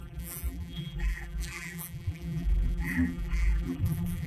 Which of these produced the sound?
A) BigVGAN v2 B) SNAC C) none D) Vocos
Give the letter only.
A